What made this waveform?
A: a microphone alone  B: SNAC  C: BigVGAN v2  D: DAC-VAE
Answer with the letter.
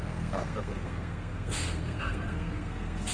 B